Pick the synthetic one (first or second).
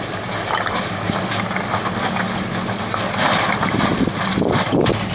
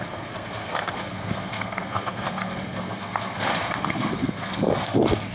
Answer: second